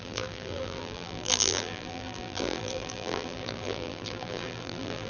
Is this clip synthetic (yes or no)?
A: yes